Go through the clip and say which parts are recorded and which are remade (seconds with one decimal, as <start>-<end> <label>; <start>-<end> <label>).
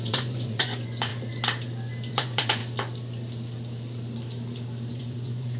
0.0-1.1 remade; 1.1-2.1 recorded; 2.1-2.6 remade; 2.6-4.9 recorded; 4.9-5.6 remade